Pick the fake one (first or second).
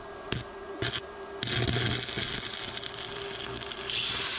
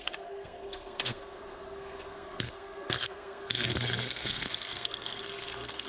second